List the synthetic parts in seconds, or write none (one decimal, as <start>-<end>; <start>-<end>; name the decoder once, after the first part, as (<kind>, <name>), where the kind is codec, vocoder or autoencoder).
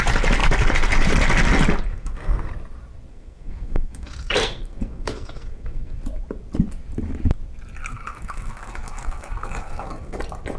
1.9-2.5 (codec, SNAC); 3.1-6.0; 7.9-10.2